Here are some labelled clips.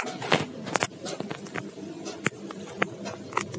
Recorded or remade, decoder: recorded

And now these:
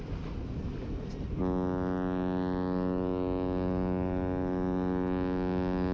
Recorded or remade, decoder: recorded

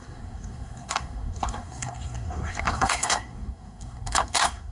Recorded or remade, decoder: remade, codec, SNAC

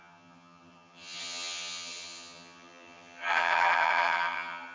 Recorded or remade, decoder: remade, vocoder, HiFi-GAN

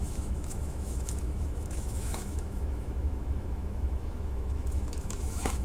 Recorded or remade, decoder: remade, autoencoder, DAC-VAE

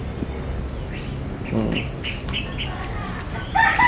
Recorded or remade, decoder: recorded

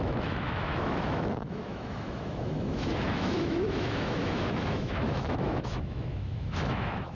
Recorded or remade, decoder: remade, autoencoder, DAC-VAE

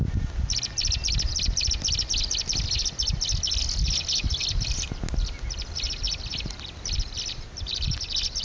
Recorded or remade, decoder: recorded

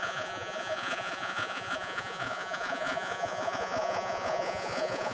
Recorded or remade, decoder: remade, vocoder, Vocos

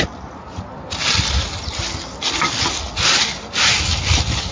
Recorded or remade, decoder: recorded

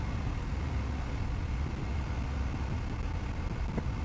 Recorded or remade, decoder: recorded